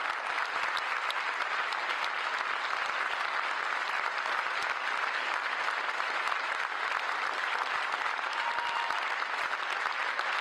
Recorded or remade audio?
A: recorded